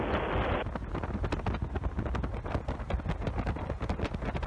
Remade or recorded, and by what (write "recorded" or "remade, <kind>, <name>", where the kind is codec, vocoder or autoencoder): recorded